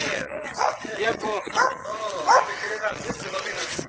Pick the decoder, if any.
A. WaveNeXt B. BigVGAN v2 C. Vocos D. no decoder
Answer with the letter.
A